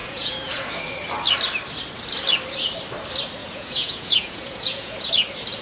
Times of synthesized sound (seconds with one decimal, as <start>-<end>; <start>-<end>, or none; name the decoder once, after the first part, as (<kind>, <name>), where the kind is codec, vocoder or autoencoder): 0.0-0.8 (vocoder, Vocos); 3.4-5.1